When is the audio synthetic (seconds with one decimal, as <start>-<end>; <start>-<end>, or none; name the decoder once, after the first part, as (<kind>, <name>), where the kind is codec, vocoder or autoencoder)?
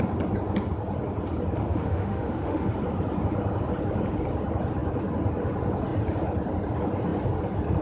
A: 1.6-2.7 (autoencoder, DAC-VAE)